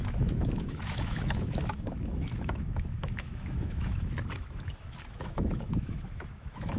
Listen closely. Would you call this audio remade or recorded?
remade